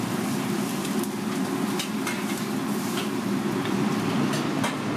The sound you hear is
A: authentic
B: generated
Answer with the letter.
A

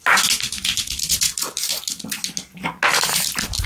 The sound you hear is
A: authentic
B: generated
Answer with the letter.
A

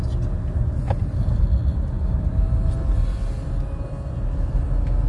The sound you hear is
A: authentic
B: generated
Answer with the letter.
A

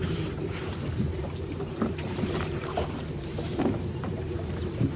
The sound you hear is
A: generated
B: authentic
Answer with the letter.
A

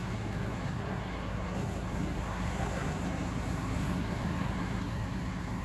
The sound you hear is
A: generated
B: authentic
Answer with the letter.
A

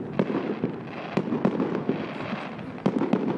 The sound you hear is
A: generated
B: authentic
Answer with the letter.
B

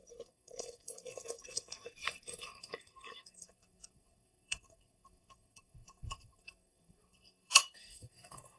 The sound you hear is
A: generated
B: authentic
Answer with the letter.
A